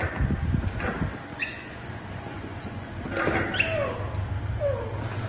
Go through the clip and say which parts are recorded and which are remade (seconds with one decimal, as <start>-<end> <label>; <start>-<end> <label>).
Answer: 0.0-1.3 recorded; 1.3-3.0 remade; 3.0-5.3 recorded